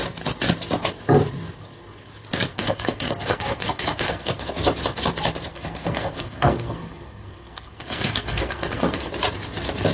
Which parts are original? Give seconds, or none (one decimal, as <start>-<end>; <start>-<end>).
0.0-2.5; 4.5-5.5; 9.1-9.9